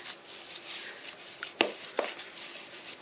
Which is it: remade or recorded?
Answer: recorded